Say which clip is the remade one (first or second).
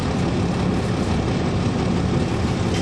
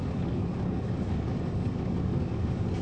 second